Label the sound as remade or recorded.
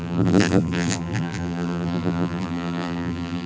remade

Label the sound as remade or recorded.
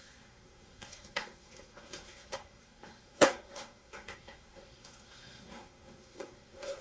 remade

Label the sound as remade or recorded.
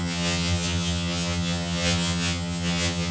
remade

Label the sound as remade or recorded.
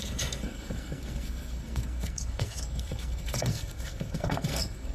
remade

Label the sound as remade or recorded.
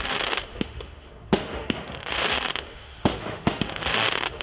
remade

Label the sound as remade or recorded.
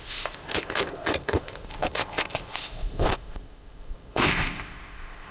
remade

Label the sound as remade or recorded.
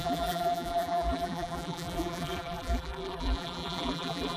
remade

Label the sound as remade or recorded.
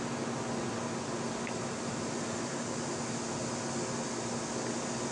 recorded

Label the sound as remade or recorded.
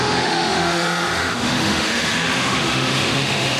remade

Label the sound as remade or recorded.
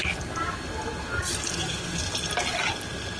recorded